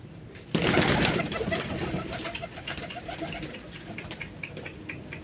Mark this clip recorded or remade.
recorded